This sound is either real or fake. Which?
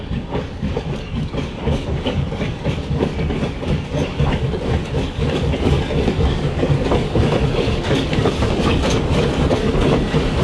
fake